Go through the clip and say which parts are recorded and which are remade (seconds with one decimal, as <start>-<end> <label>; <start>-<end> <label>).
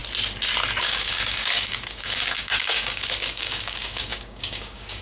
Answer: 0.0-0.8 recorded; 0.8-5.0 remade